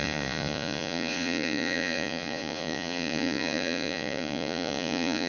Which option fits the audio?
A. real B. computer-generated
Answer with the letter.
B